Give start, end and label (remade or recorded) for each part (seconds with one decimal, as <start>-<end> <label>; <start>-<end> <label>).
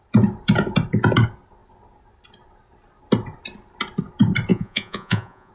0.0-4.5 recorded; 4.5-5.5 remade